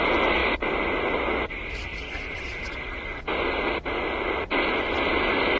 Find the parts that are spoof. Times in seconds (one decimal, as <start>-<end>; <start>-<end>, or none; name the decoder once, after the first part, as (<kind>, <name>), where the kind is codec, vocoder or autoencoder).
none